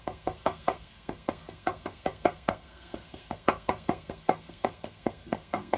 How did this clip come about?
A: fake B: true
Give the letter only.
A